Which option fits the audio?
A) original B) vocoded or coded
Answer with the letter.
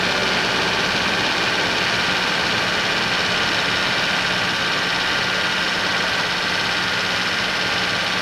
A